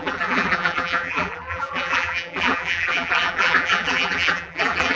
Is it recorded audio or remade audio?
remade